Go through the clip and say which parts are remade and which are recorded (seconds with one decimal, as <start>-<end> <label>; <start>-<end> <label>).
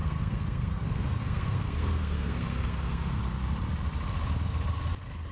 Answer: 0.0-3.2 remade; 3.2-5.3 recorded